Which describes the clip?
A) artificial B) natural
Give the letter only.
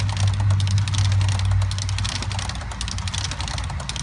B